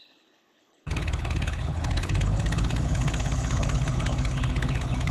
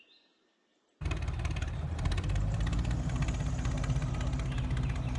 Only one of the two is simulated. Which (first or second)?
first